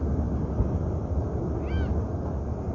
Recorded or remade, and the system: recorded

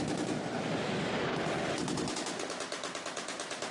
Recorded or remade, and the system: recorded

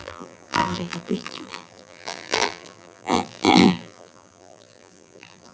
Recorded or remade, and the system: remade, vocoder, BigVGAN v2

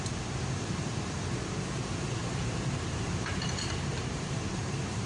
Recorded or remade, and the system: remade, vocoder, BigVGAN v2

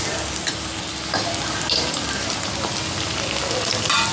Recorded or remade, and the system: recorded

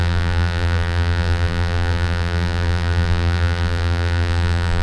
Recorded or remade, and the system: remade, vocoder, BigVGAN v2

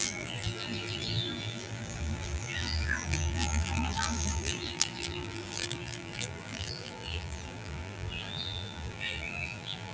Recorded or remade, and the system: remade, vocoder, BigVGAN v2